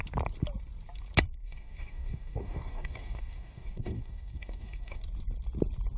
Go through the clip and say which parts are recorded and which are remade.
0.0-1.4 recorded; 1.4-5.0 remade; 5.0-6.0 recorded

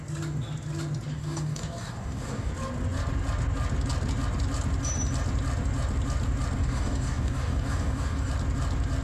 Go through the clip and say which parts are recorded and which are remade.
0.0-1.1 recorded; 1.1-2.5 remade; 2.5-6.6 recorded; 6.6-8.3 remade; 8.3-9.0 recorded

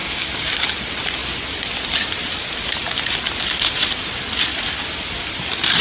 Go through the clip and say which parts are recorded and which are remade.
0.0-0.5 remade; 0.5-5.8 recorded

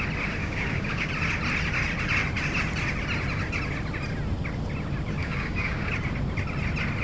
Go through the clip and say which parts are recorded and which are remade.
0.0-0.4 recorded; 0.4-1.1 remade; 1.1-5.2 recorded; 5.2-5.9 remade; 5.9-7.0 recorded

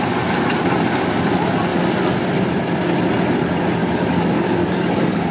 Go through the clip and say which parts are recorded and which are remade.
0.0-3.8 recorded; 3.8-5.3 remade